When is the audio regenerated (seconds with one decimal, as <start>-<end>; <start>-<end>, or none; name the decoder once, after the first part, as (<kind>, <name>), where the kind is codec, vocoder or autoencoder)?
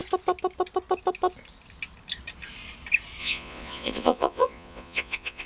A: 3.2-5.5 (vocoder, Vocos)